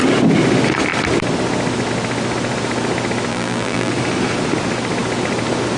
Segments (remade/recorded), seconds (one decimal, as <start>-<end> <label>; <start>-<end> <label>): 0.0-3.3 recorded; 3.3-3.9 remade; 3.9-5.8 recorded